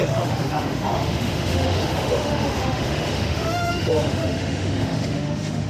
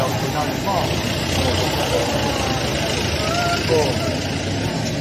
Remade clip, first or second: first